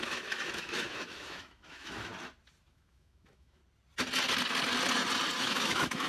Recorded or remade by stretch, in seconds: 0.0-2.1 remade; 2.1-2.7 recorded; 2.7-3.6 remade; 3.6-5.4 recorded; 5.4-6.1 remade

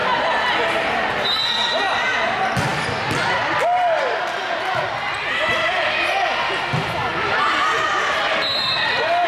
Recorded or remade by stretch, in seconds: 0.0-9.3 recorded

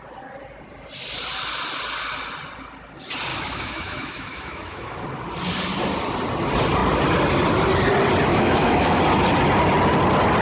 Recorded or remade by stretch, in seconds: 0.0-3.3 recorded; 3.3-5.0 remade; 5.0-8.3 recorded; 8.3-9.0 remade; 9.0-10.4 recorded

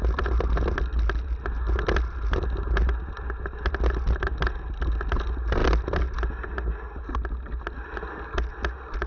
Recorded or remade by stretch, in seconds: 0.0-9.1 recorded

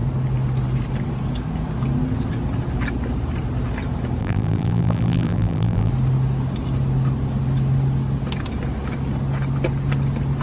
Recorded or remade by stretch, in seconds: 0.0-4.2 recorded; 4.2-5.9 remade; 5.9-10.4 recorded

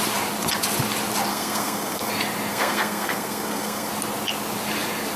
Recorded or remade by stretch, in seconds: 0.0-1.3 recorded; 1.3-2.1 remade; 2.1-2.5 recorded; 2.5-3.9 remade; 3.9-5.2 recorded